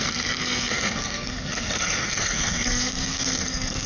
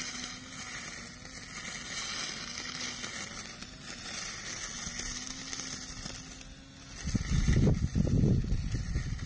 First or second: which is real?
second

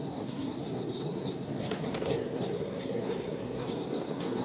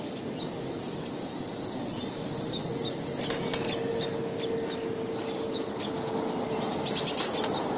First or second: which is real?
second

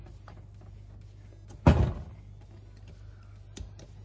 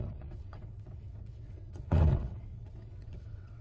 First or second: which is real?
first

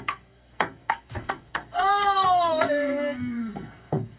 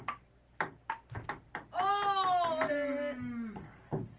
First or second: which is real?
second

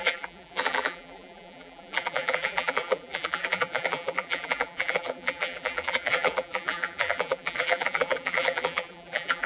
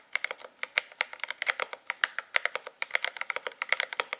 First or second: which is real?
second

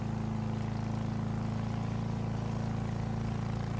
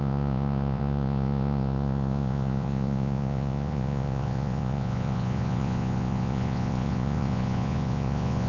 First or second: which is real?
first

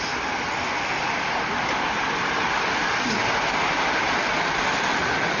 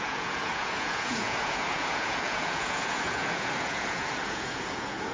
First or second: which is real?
first